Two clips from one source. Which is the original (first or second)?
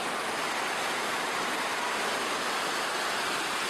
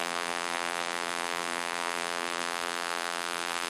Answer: first